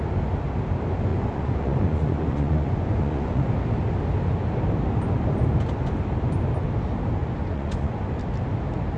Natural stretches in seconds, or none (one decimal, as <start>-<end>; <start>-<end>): 0.0-1.1; 3.5-7.2; 8.0-9.0